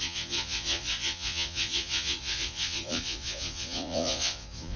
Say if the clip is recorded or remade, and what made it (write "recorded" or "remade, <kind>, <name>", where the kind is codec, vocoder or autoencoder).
remade, vocoder, Vocos